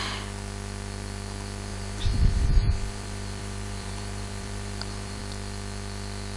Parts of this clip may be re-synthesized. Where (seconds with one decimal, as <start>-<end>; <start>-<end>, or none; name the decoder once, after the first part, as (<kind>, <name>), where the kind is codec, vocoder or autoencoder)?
1.7-5.2 (vocoder, BigVGAN v2)